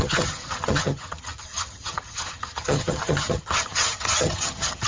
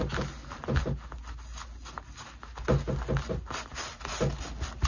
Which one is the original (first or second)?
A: second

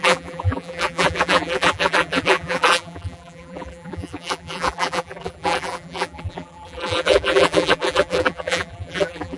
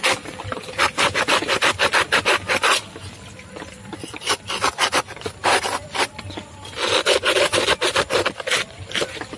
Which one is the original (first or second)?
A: second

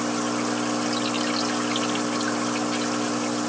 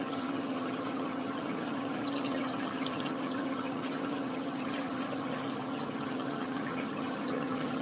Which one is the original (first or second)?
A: first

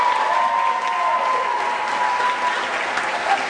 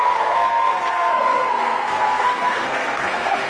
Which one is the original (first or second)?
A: first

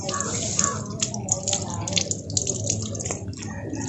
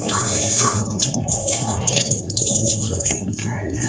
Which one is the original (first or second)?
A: first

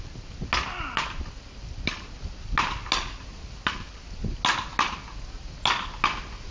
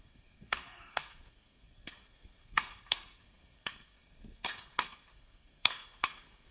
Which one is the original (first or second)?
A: first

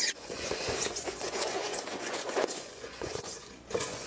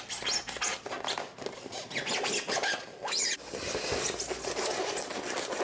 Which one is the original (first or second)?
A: second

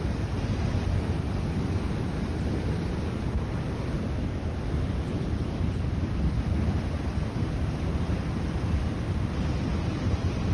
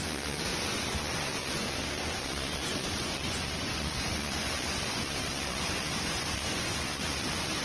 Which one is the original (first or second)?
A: first